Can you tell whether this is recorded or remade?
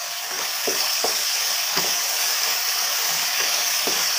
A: remade